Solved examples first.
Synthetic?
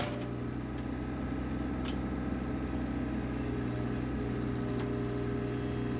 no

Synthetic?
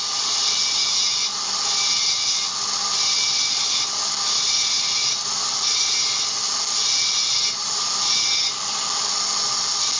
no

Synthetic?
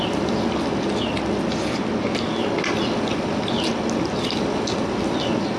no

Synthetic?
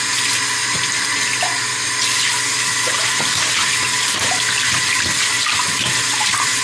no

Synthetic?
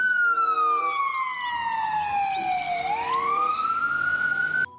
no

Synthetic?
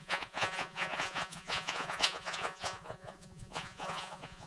yes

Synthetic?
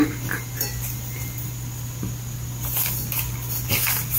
no